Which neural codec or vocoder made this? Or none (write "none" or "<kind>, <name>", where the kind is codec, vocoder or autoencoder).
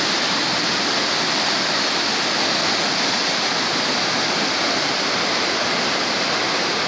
none